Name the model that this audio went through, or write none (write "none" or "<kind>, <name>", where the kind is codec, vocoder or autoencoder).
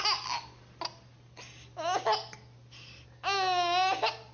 none